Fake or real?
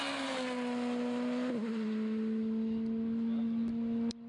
real